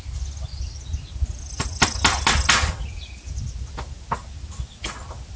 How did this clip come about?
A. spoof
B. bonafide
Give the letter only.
B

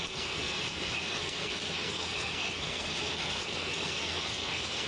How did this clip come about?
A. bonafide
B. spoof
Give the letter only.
B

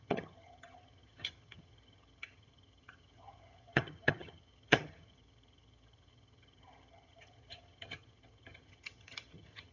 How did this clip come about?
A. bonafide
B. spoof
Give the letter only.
B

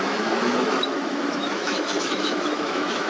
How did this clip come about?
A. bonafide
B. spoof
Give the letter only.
B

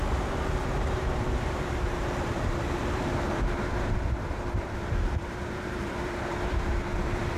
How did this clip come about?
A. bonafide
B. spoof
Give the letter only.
B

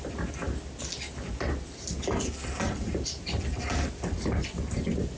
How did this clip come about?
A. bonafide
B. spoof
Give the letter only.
A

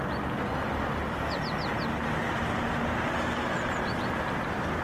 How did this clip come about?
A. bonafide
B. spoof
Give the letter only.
A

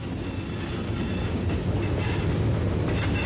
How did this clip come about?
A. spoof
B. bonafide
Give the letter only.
B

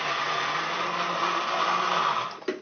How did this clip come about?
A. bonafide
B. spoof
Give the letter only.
A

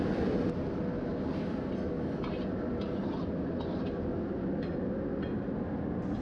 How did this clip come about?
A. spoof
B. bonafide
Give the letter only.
B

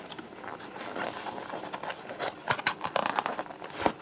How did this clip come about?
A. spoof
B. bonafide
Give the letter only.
B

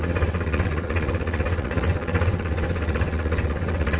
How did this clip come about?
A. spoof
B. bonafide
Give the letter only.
A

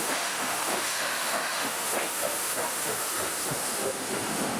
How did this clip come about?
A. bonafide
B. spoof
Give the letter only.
B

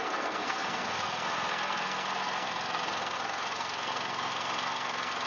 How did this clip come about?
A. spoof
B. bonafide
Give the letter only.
A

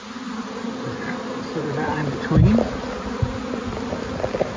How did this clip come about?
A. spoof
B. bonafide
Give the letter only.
B